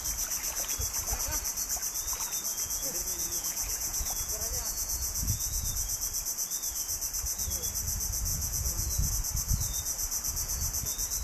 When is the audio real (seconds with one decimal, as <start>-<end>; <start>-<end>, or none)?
0.0-2.5; 5.7-8.3; 9.1-11.2